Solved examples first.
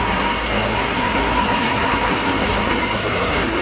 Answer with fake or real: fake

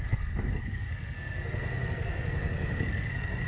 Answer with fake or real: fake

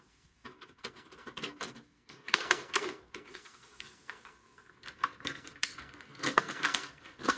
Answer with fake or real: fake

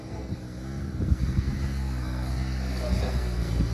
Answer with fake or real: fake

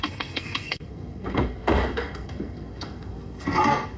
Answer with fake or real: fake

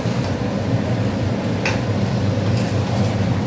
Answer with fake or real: real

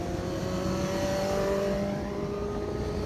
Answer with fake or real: real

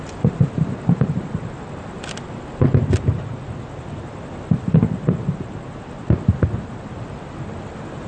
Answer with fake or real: real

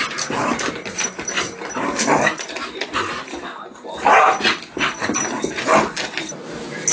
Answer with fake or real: real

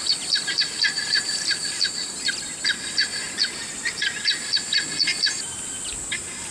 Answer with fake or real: real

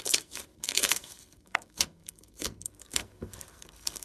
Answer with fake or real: fake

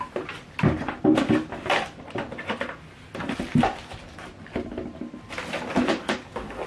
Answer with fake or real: real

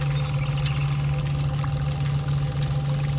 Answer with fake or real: real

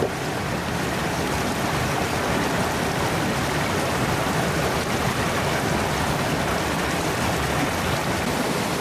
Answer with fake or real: real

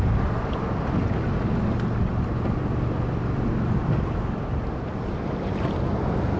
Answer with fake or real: real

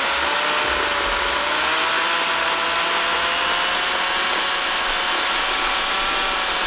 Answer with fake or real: real